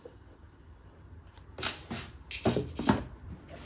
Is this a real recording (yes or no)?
yes